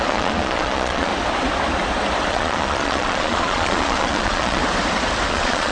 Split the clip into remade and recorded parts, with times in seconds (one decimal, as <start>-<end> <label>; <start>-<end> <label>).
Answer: 0.0-1.1 remade; 1.1-2.3 recorded; 2.3-4.6 remade; 4.6-5.3 recorded; 5.3-5.7 remade